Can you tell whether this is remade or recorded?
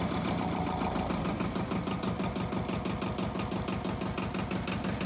recorded